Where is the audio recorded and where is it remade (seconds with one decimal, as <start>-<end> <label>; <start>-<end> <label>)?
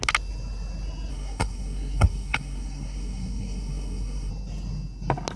0.0-1.1 recorded; 1.1-4.3 remade; 4.3-5.4 recorded